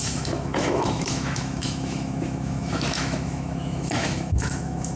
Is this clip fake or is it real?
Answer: fake